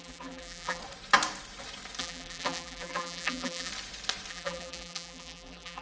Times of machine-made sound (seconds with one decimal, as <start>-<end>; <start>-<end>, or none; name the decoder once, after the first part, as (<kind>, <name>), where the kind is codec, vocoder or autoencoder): 0.0-0.8 (vocoder, BigVGAN v2); 2.0-3.7; 4.3-5.8